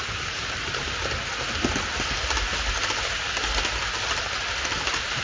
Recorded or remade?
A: recorded